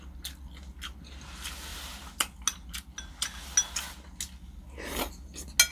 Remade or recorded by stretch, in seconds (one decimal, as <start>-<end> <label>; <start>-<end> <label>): 0.0-5.7 recorded